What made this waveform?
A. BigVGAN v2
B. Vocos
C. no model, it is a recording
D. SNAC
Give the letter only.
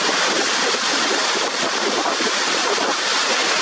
C